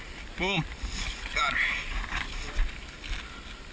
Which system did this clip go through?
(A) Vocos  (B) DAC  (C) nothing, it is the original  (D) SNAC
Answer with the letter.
C